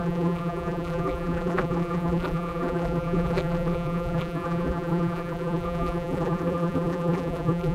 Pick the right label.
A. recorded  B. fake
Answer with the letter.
B